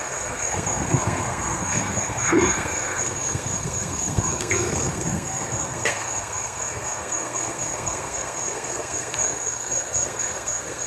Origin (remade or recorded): remade